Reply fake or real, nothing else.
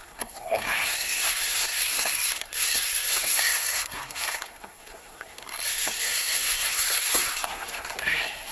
fake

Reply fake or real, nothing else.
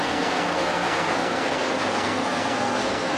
fake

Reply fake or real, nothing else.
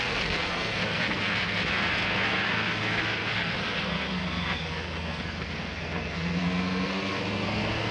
fake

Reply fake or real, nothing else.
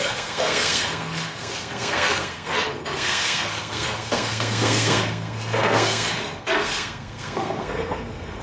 fake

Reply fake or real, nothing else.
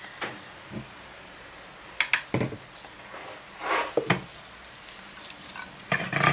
real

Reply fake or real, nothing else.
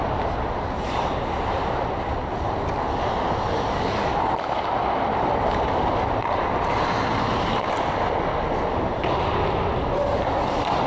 real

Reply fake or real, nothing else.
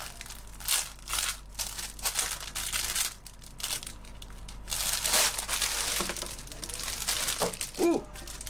real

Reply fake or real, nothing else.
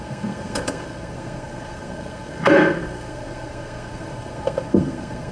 fake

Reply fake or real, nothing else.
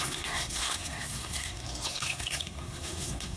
fake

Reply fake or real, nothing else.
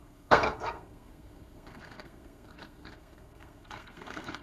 fake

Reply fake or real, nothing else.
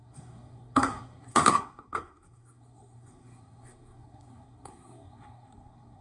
fake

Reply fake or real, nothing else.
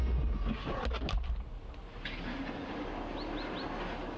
real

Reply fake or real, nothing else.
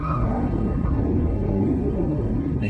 fake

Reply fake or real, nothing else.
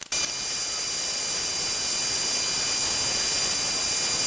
real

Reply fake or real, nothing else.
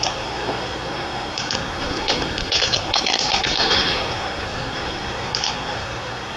fake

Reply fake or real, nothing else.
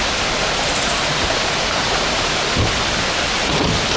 real